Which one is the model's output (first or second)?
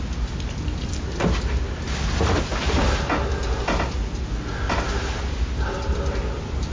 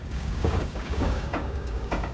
second